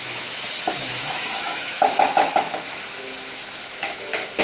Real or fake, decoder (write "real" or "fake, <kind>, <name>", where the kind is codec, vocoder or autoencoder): fake, autoencoder, DAC-VAE